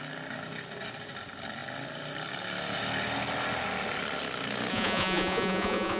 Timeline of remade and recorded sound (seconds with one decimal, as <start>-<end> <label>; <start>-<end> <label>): 0.0-4.7 recorded; 4.7-6.0 remade